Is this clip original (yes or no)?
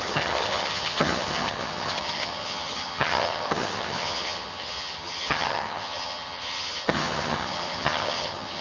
no